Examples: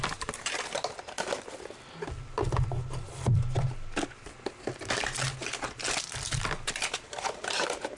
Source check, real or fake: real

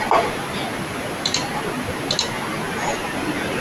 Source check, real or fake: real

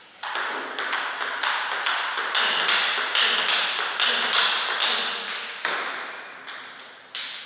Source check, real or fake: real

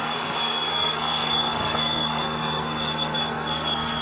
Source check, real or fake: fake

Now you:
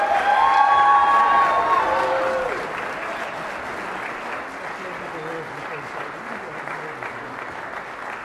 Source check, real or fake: real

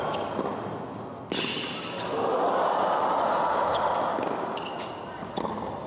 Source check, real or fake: real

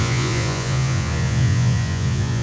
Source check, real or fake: fake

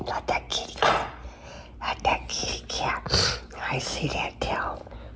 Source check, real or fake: real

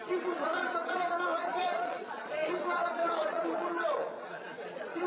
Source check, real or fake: fake